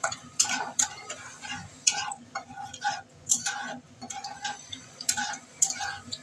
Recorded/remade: remade